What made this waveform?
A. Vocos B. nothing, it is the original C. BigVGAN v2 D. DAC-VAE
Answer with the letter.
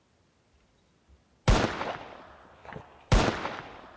B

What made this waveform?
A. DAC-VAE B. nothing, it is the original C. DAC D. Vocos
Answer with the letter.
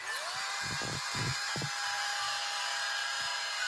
B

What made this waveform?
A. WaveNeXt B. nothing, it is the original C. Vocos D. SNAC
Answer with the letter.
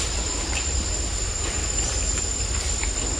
B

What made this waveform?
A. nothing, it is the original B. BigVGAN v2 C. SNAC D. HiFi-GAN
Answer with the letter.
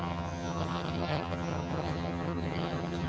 D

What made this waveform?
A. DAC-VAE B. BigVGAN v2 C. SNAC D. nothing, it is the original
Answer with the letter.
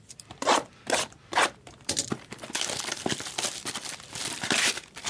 B